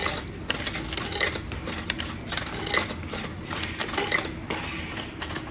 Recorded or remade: recorded